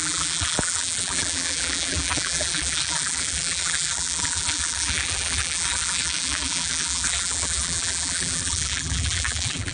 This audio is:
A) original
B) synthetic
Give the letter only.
B